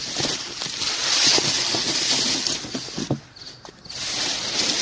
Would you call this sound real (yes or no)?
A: yes